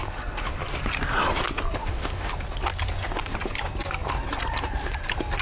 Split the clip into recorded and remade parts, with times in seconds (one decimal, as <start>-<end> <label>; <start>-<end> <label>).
0.0-1.8 recorded; 1.8-2.3 remade; 2.3-5.4 recorded